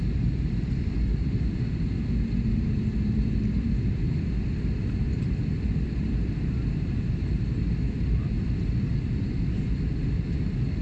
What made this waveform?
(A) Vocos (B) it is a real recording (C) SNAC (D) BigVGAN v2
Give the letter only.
B